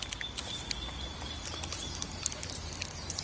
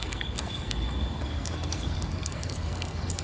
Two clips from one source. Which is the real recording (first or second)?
first